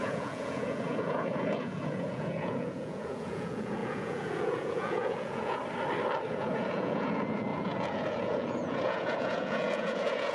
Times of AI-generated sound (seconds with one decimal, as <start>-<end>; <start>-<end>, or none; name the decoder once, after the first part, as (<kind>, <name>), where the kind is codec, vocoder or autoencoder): 0.0-5.6 (vocoder, Vocos); 6.3-10.3